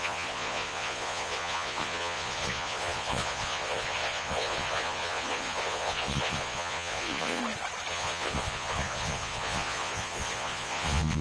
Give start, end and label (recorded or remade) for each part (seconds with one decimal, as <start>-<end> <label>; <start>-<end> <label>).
0.0-7.4 remade; 7.4-7.9 recorded; 7.9-11.2 remade